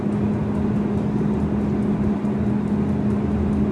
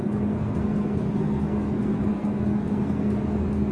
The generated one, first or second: second